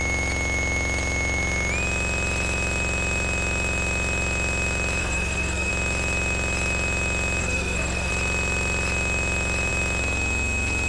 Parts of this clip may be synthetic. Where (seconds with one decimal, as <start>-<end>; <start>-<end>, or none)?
5.0-5.7; 7.4-8.1